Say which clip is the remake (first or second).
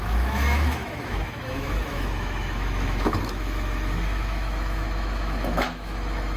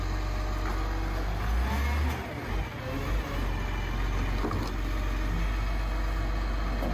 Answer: first